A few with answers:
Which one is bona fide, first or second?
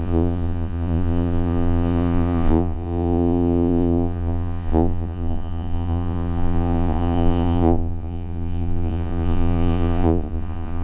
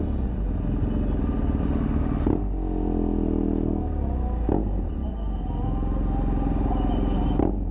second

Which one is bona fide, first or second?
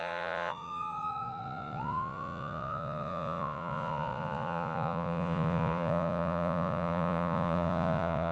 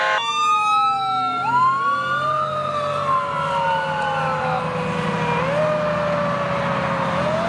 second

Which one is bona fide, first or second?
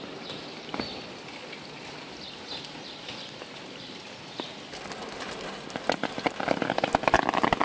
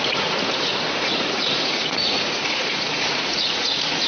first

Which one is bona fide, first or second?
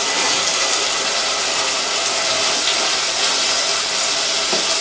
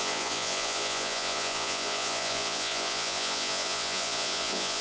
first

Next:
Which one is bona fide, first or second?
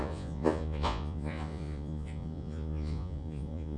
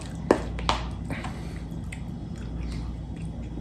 second